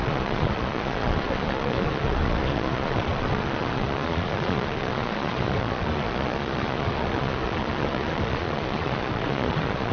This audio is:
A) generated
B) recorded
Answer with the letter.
A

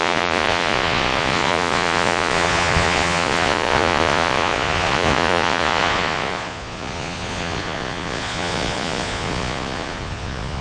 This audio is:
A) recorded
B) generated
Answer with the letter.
B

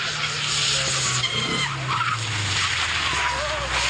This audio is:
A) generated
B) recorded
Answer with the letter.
B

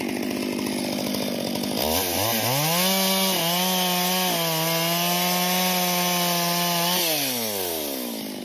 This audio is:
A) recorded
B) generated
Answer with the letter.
A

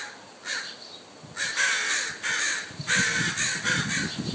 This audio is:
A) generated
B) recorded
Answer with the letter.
B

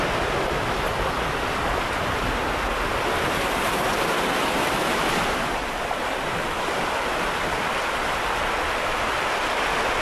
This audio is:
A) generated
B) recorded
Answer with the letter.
B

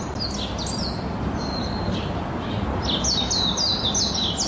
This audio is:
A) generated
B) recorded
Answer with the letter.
B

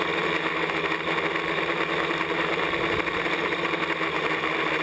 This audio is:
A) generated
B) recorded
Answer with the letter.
B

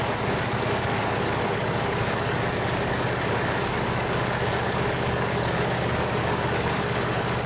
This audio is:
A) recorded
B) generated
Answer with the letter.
B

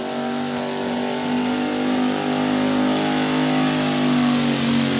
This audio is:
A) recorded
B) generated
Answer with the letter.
A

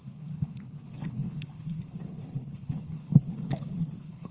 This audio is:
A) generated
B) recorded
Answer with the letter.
A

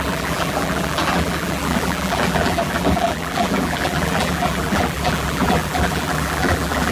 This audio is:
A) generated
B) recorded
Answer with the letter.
A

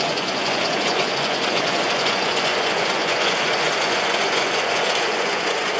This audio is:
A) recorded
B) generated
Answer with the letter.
B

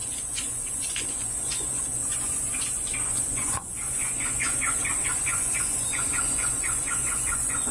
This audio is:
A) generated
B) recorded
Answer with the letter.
A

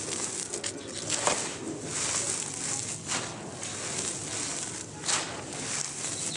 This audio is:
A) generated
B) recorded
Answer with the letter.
B